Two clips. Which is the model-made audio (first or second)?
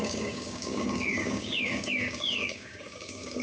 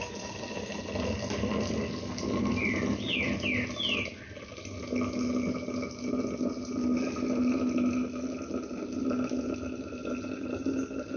first